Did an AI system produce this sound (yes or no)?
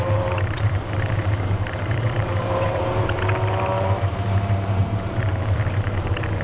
yes